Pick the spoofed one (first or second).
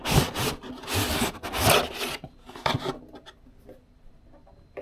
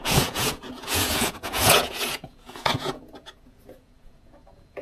second